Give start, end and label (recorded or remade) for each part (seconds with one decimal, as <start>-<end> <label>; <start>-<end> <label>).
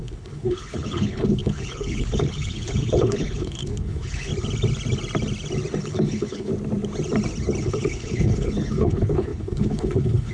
0.0-4.3 remade; 4.3-5.8 recorded; 5.8-6.5 remade; 6.5-7.6 recorded; 7.6-10.3 remade